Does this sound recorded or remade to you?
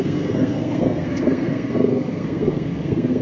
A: remade